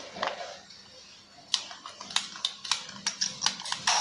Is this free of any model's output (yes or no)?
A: yes